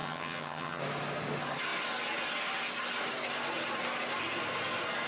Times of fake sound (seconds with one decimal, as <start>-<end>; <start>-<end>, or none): 0.0-0.8